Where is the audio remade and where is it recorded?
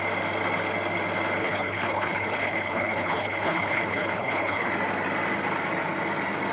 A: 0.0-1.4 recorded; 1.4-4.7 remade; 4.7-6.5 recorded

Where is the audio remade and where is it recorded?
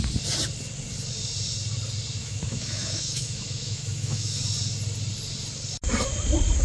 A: 0.0-2.2 recorded; 2.2-4.4 remade; 4.4-6.6 recorded